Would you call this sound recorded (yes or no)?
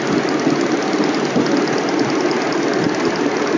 yes